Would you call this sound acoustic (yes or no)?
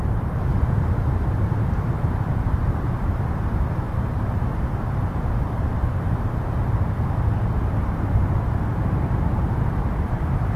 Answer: no